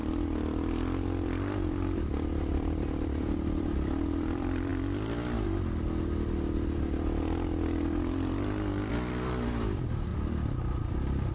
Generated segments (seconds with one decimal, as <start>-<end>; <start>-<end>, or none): 1.0-4.7; 8.9-11.3